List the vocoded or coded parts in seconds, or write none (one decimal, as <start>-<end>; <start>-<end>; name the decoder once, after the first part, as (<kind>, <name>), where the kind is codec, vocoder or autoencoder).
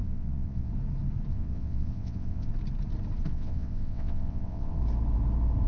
0.0-0.7 (vocoder, WaveNeXt); 1.3-2.5; 3.3-4.8